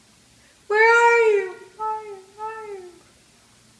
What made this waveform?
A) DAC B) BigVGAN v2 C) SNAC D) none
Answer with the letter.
D